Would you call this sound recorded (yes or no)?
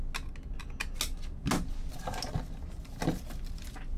yes